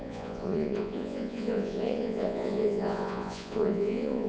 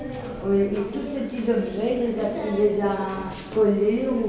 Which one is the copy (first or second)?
first